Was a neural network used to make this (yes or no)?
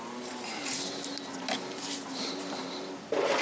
no